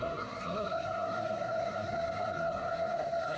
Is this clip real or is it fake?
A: fake